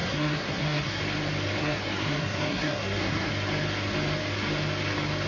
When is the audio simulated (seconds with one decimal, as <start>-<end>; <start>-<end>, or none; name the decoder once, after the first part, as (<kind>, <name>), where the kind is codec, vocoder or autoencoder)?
0.0-1.0 (codec, SNAC); 1.6-3.3